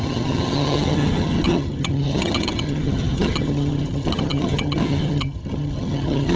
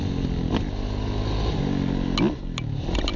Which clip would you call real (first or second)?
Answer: second